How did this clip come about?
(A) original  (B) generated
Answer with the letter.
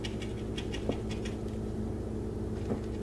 A